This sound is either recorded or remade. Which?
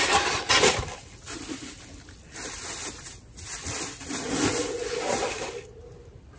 recorded